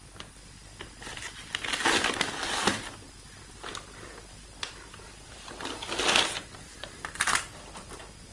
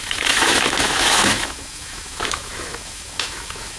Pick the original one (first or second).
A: first